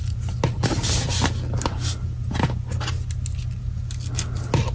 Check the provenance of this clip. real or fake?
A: real